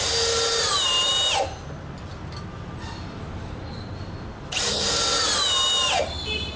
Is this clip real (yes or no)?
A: yes